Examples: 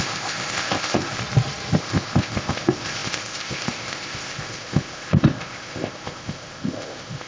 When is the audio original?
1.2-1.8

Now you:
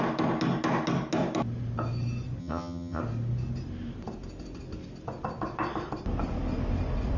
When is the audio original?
0.0-2.4; 3.0-7.2

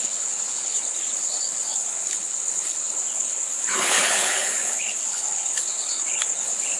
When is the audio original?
none

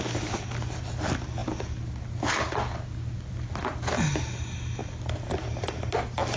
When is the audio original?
0.0-4.8; 5.5-6.4

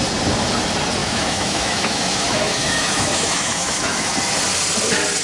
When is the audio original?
0.0-1.0; 4.1-5.2

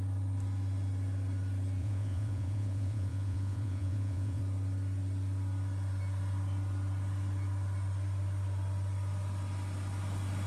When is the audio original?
0.0-1.8; 4.4-10.5